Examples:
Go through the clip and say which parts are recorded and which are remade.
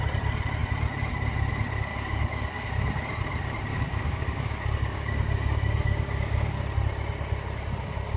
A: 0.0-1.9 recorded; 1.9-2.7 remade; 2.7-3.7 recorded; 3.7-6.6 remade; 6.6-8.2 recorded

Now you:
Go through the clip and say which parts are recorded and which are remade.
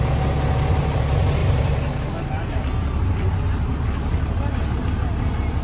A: 0.0-5.6 recorded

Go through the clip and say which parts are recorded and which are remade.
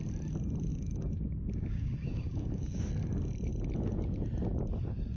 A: 0.0-0.7 recorded; 0.7-2.9 remade; 2.9-5.2 recorded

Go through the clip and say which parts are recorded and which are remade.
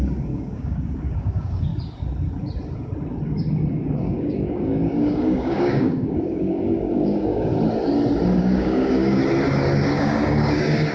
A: 0.0-1.7 remade; 1.7-3.7 recorded; 3.7-7.5 remade; 7.5-8.4 recorded; 8.4-9.2 remade; 9.2-9.9 recorded; 9.9-10.9 remade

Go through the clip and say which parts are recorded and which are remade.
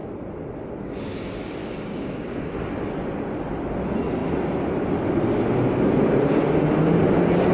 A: 0.0-1.6 recorded; 1.6-2.5 remade; 2.5-7.5 recorded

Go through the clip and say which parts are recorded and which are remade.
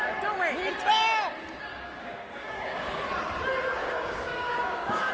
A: 0.0-1.7 recorded; 1.7-3.0 remade; 3.0-3.8 recorded; 3.8-5.1 remade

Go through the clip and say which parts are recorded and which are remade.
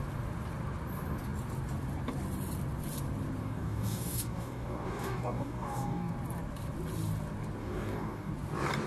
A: 0.0-3.4 recorded; 3.4-6.1 remade; 6.1-7.6 recorded; 7.6-8.3 remade; 8.3-8.9 recorded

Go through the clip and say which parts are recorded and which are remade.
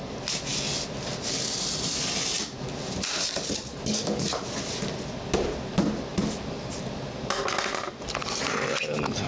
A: 0.0-3.7 recorded; 3.7-4.4 remade; 4.4-9.3 recorded